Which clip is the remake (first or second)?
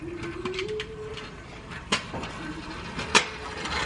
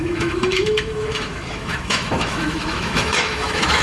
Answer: second